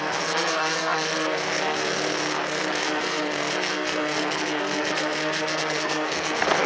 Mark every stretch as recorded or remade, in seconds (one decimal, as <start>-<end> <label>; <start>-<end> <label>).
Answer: 0.0-6.7 remade